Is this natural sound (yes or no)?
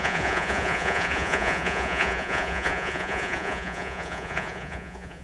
no